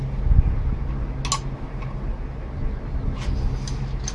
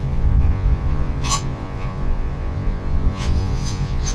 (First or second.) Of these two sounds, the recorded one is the first